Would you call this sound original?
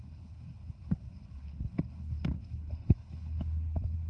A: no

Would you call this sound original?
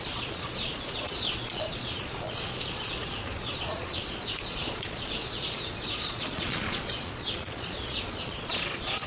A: no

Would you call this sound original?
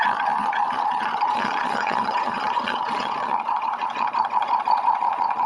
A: no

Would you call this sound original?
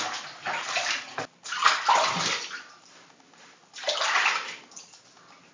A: yes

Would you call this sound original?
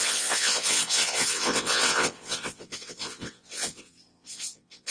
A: no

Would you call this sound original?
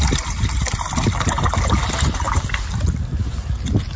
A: yes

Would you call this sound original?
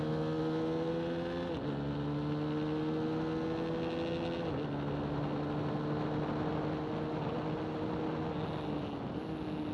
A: yes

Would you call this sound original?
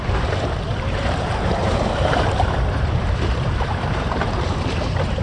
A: no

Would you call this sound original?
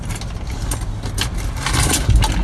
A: yes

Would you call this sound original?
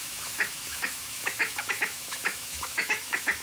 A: no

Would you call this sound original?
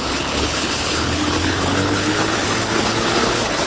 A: no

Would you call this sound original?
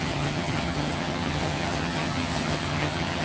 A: no